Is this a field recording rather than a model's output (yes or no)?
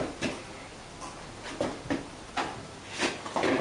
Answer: yes